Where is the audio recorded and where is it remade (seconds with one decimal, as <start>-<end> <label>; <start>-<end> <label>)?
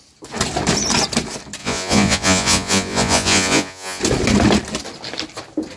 0.0-1.6 recorded; 1.6-4.0 remade; 4.0-5.8 recorded